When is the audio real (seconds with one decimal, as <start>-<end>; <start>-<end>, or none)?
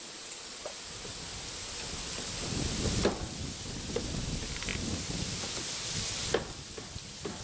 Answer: 0.7-7.4